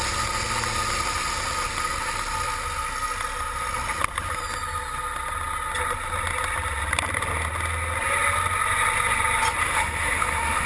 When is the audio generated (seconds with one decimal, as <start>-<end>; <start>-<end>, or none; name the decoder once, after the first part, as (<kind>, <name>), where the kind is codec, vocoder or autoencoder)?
9.6-10.7 (autoencoder, DAC-VAE)